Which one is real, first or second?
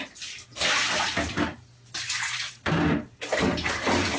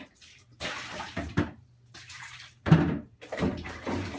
first